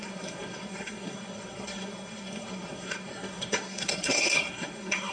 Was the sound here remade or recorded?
remade